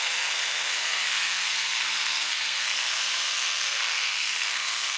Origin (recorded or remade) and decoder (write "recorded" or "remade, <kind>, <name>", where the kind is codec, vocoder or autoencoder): remade, codec, SNAC